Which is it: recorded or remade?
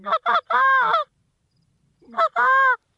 remade